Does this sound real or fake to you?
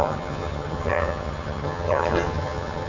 fake